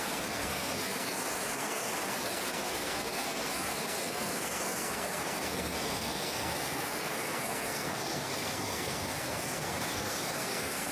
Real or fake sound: fake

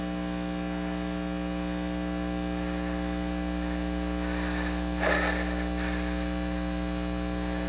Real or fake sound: real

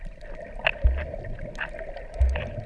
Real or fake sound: real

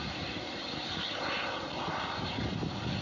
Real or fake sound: real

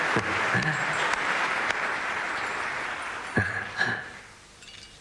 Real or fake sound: real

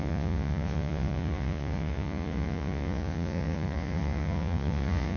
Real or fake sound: fake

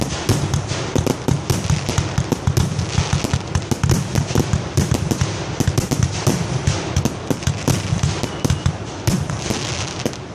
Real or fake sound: real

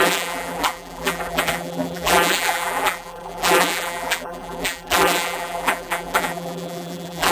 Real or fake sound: fake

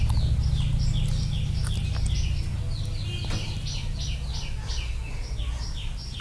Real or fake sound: real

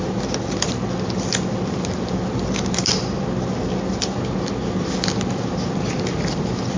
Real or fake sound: real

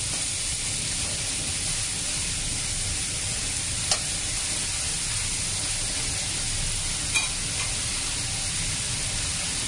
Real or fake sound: real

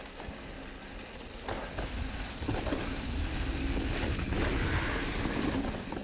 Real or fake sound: real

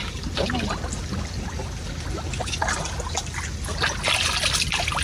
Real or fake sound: real